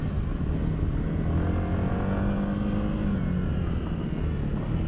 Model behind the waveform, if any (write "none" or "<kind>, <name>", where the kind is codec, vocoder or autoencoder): none